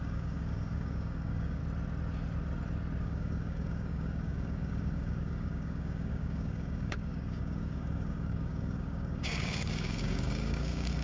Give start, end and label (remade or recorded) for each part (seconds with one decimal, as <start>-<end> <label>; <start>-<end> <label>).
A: 0.0-1.6 remade; 1.6-3.0 recorded; 3.0-11.0 remade